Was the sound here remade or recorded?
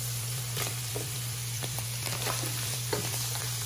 remade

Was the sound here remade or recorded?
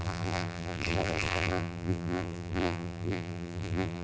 remade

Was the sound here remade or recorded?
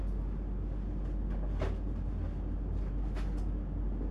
recorded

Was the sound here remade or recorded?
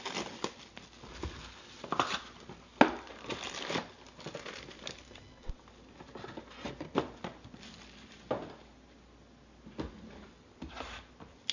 recorded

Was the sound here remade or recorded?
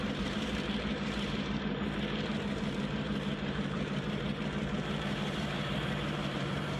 remade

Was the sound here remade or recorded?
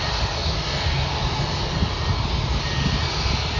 recorded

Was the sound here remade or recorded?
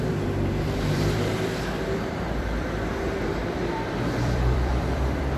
remade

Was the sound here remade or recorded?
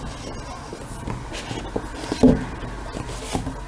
recorded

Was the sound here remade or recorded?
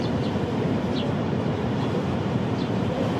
remade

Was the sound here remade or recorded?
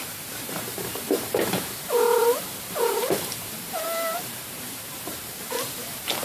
remade